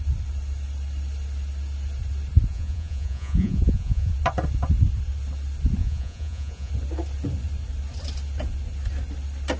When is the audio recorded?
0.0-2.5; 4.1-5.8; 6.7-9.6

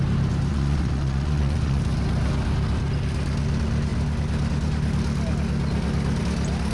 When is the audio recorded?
0.0-0.5; 1.8-6.7

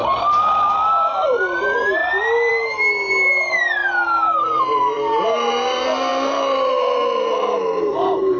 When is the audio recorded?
0.0-8.4

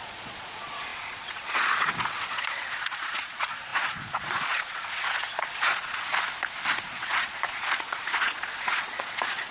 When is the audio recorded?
6.1-6.9

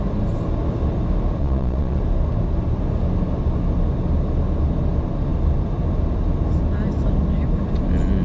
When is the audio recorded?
0.0-1.4; 2.0-8.2

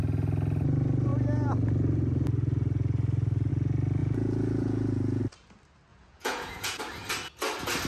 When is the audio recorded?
0.0-4.0; 5.2-5.9; 6.8-7.9